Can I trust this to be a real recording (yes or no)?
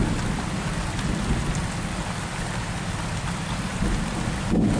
yes